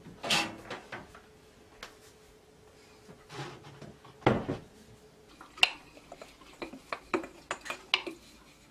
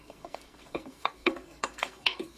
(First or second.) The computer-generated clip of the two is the second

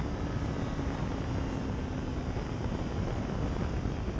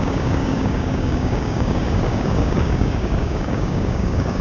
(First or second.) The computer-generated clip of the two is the second